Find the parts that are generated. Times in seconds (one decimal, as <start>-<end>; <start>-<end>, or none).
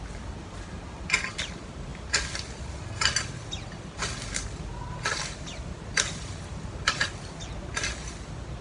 none